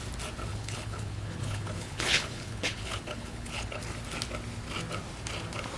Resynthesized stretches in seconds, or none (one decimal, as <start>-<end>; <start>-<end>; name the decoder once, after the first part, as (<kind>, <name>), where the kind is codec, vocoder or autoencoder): 0.5-3.8 (codec, HILCodec)